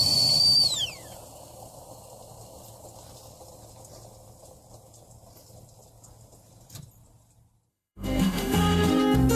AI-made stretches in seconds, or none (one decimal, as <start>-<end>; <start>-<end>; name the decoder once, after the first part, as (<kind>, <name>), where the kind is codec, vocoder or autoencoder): 7.7-9.0 (autoencoder, DAC-VAE)